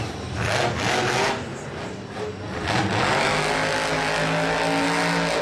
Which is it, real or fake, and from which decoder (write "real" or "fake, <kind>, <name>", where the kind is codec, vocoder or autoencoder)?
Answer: real